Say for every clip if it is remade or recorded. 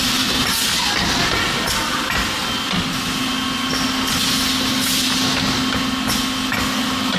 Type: recorded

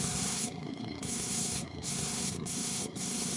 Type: remade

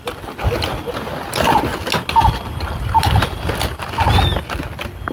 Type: recorded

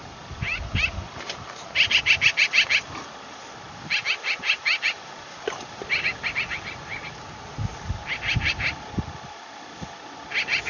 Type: recorded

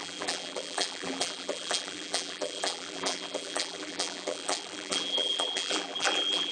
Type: remade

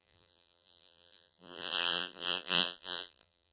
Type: remade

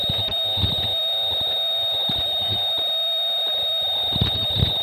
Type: recorded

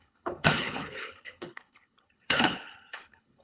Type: remade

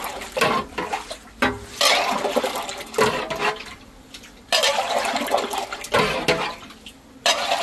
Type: recorded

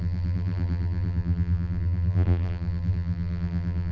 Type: remade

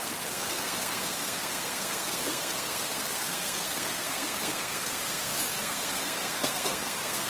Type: remade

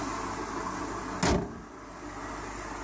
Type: recorded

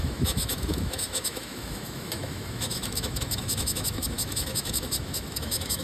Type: remade